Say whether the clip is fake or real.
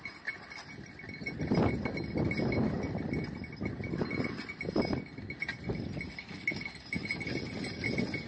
real